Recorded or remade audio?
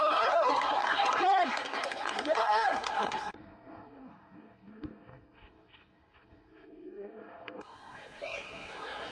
remade